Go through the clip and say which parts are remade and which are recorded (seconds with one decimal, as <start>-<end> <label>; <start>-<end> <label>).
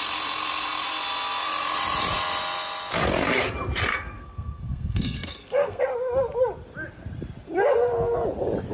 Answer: 0.0-3.9 recorded; 3.9-5.8 remade; 5.8-8.7 recorded